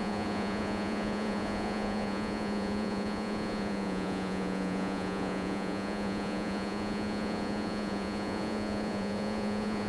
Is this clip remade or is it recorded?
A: remade